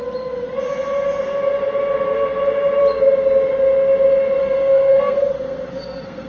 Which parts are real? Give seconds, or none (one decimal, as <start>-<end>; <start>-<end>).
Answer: 0.0-4.4